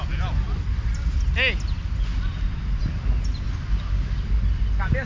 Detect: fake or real real